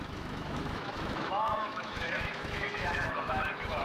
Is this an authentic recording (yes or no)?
no